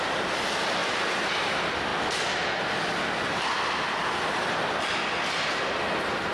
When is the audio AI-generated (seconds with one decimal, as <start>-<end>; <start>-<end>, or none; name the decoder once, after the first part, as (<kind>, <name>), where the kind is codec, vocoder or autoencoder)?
0.8-1.5 (vocoder, BigVGAN v2)